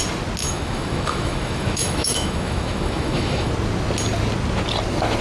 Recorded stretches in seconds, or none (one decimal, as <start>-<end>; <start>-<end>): 0.0-0.4; 3.5-5.2